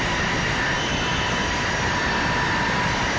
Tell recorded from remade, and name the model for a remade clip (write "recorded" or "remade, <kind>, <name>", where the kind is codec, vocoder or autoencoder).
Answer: recorded